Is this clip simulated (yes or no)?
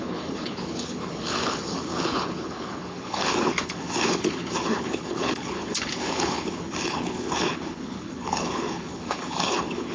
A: yes